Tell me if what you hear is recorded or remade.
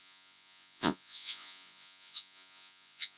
remade